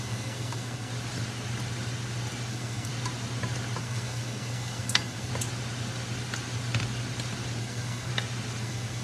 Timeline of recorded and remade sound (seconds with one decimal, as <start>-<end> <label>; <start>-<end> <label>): 0.0-0.9 remade; 0.9-2.5 recorded; 2.5-2.9 remade; 2.9-3.8 recorded; 3.8-5.3 remade; 5.3-7.6 recorded; 7.6-8.1 remade; 8.1-8.6 recorded; 8.6-9.0 remade